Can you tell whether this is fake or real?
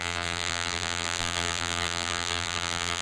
fake